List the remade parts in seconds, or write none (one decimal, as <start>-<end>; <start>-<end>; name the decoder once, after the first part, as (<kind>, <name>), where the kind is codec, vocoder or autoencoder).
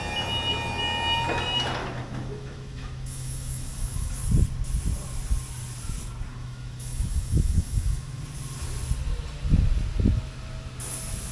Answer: 1.8-4.1 (autoencoder, DAC-VAE); 6.3-8.2